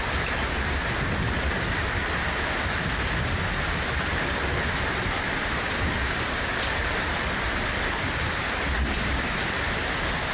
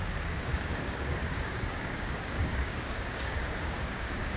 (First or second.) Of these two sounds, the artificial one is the second